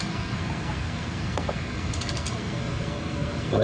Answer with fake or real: fake